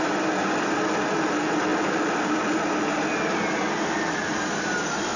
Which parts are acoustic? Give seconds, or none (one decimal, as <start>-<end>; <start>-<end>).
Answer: 0.0-5.2